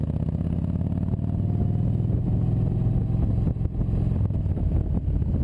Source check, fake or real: real